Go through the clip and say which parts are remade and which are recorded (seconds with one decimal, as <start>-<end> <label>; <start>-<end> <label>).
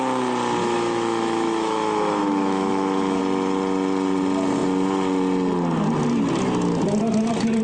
0.0-0.6 recorded; 0.6-3.2 remade; 3.2-7.6 recorded